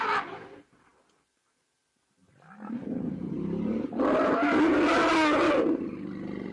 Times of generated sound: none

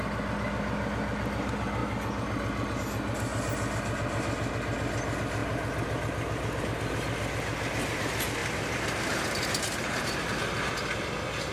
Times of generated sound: 8.4-10.2 (vocoder, BigVGAN v2)